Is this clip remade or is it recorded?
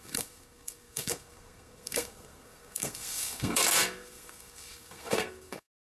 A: remade